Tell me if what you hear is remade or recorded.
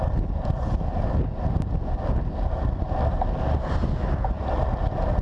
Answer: recorded